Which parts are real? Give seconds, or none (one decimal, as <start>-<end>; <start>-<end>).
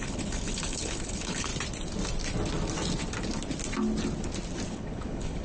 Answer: 1.5-4.7